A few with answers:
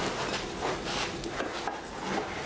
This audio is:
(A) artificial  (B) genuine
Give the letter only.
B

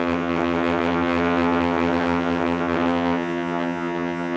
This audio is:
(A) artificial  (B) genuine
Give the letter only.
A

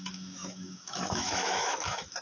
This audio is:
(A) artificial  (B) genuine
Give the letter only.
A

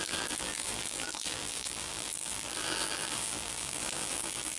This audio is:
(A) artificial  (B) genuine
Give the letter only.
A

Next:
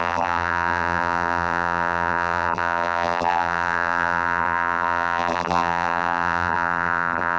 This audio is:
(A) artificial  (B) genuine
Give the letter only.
A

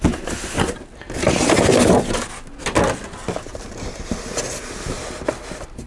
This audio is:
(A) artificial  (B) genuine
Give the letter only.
B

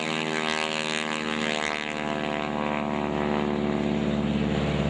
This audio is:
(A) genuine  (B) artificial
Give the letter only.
A